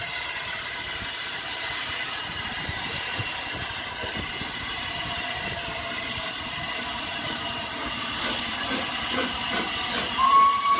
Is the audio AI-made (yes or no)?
yes